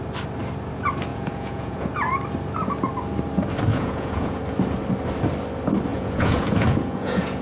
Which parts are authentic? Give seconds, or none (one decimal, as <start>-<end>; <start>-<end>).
0.0-1.1; 1.9-3.7; 4.4-5.9